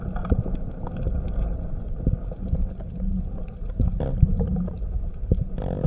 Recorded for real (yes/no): yes